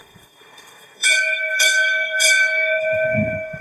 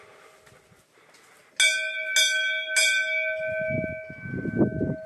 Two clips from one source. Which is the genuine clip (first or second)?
second